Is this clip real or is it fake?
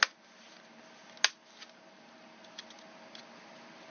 real